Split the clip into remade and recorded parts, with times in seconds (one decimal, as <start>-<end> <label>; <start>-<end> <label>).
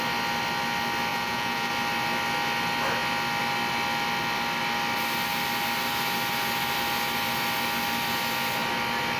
0.0-1.1 recorded; 1.1-1.7 remade; 1.7-9.2 recorded